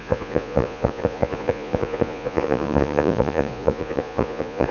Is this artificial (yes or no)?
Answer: yes